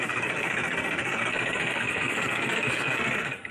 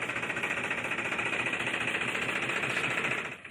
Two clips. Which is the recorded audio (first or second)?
second